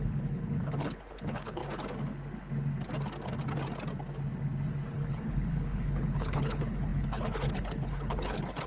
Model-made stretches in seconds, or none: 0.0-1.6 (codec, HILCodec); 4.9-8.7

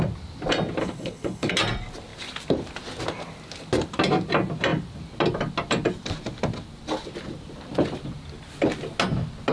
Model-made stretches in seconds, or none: 0.8-1.5 (codec, HILCodec)

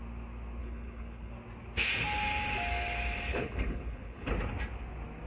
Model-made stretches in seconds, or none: 0.6-1.3 (codec, HILCodec); 3.3-4.3

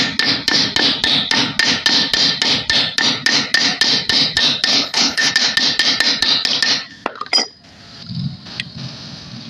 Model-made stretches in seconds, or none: 4.7-5.3 (codec, HILCodec)

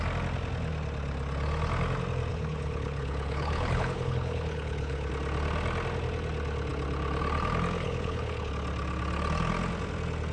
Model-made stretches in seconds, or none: 2.3-5.1 (codec, HILCodec); 7.8-8.5

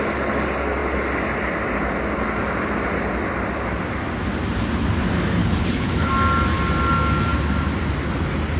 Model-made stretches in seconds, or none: 5.4-6.1 (codec, HILCodec)

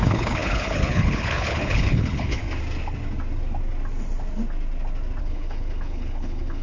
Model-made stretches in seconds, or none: 0.0-2.4 (codec, HILCodec); 5.2-6.6

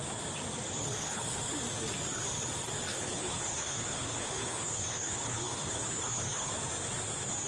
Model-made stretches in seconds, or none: 0.8-1.4 (codec, HILCodec); 2.9-6.5